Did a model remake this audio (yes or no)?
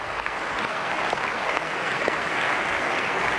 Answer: yes